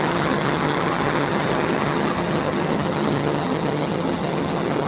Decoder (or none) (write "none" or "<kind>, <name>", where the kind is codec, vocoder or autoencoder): vocoder, HiFi-GAN